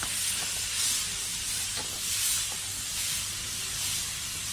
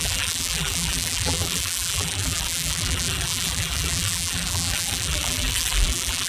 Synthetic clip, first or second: second